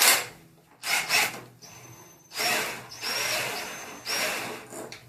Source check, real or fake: real